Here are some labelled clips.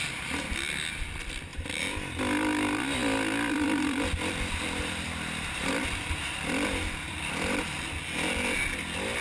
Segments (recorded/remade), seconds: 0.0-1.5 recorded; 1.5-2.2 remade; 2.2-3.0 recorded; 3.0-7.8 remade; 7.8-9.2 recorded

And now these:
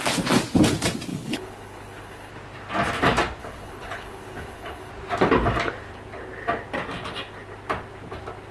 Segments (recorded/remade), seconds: 0.0-1.1 recorded; 1.1-2.3 remade; 2.3-3.4 recorded; 3.4-4.9 remade; 4.9-8.5 recorded

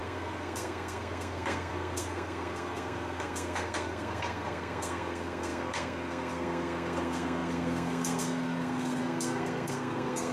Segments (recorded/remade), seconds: 0.0-10.3 remade

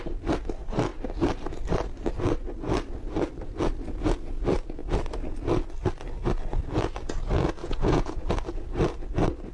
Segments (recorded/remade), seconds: 0.0-7.6 recorded; 7.6-8.3 remade; 8.3-9.5 recorded

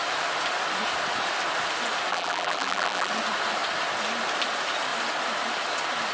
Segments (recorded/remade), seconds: 0.0-2.1 recorded; 2.1-3.1 remade; 3.1-6.1 recorded

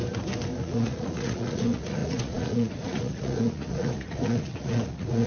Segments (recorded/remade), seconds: 0.0-0.6 recorded; 0.6-5.3 remade

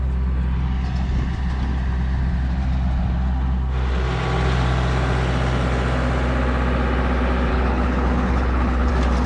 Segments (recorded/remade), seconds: 0.0-7.5 recorded; 7.5-8.9 remade; 8.9-9.3 recorded